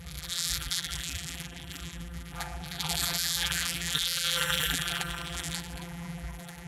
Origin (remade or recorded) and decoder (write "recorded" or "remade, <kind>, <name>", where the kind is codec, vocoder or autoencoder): remade, vocoder, BigVGAN v2